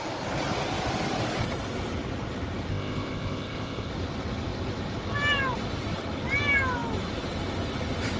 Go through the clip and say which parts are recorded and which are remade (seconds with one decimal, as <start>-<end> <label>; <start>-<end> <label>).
0.0-2.7 recorded; 2.7-3.9 remade; 3.9-8.2 recorded